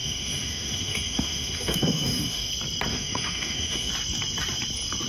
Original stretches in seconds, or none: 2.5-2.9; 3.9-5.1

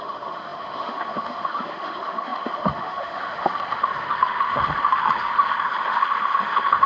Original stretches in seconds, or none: none

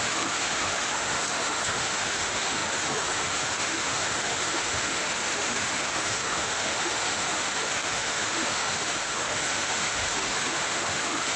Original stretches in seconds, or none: none

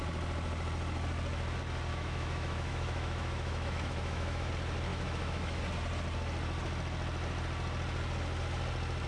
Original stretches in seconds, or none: 0.0-1.9; 4.5-4.9; 5.6-9.1